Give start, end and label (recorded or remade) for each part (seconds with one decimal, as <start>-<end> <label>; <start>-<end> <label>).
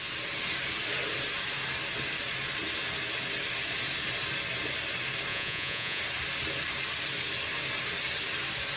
0.0-5.3 recorded; 5.3-6.0 remade; 6.0-8.8 recorded